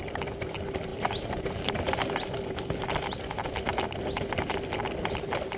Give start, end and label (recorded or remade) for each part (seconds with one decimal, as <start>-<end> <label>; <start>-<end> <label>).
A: 0.0-5.6 recorded